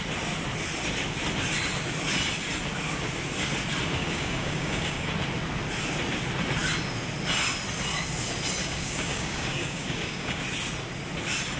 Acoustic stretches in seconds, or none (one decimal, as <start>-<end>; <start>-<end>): 0.0-4.0; 5.1-8.6; 10.4-11.6